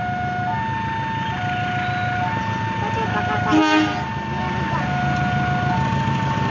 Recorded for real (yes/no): yes